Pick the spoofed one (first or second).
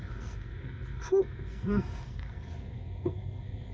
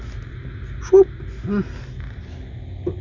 first